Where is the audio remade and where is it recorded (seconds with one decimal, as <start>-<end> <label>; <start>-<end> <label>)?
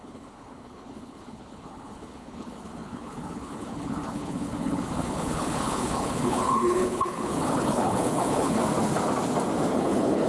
0.0-8.6 remade; 8.6-9.7 recorded; 9.7-10.3 remade